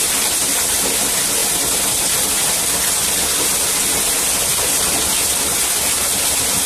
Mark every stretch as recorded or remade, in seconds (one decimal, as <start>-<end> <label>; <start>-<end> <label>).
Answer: 0.0-6.7 recorded